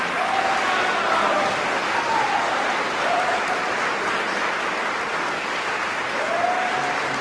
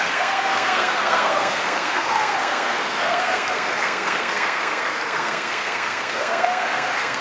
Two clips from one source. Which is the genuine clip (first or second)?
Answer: first